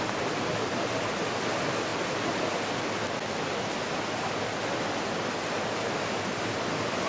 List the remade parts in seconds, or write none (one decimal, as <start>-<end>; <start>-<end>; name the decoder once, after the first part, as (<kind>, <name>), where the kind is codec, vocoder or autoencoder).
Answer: none